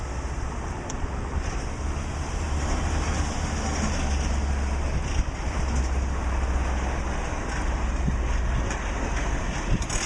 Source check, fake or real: real